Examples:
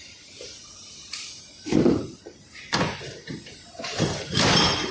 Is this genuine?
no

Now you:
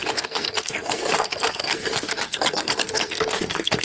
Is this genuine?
no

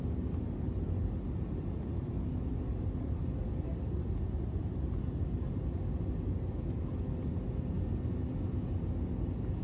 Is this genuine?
yes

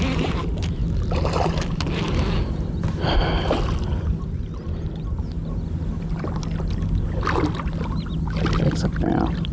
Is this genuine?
yes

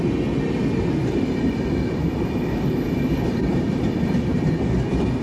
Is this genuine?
yes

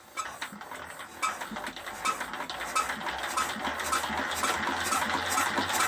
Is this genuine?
yes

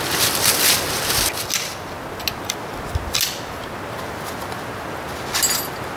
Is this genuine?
yes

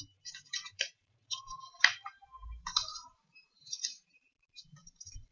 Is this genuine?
no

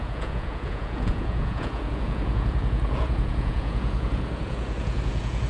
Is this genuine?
no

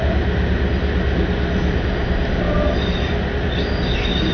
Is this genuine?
yes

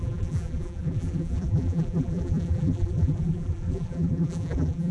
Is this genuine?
no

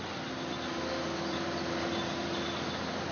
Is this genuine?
yes